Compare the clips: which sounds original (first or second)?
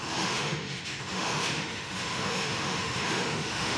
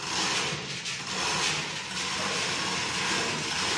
second